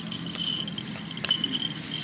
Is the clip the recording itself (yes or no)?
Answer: yes